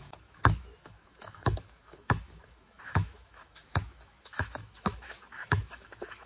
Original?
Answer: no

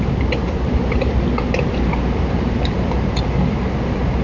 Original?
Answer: yes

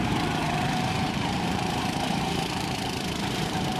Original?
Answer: no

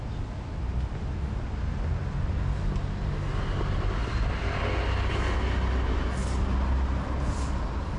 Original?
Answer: yes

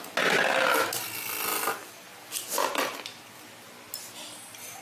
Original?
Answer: yes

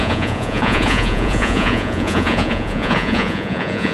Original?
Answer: no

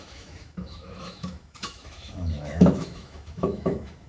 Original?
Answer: no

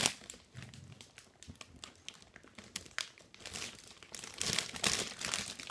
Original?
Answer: yes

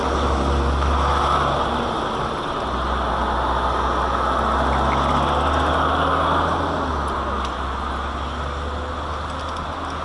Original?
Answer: yes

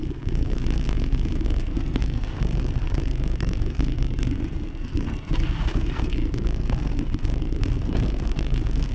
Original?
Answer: no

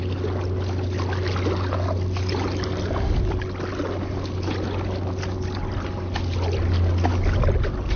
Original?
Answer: yes